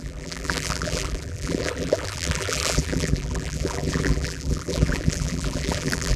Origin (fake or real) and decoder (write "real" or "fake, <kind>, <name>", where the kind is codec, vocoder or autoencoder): fake, vocoder, BigVGAN v2